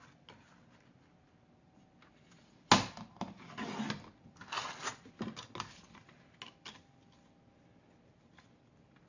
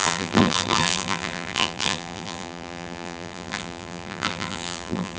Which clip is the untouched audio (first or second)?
first